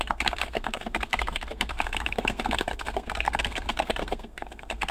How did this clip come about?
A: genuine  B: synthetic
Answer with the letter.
B